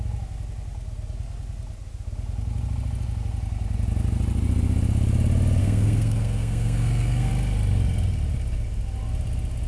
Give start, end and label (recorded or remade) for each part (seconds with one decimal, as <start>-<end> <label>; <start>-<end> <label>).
0.0-5.6 recorded; 5.6-7.3 remade; 7.3-9.7 recorded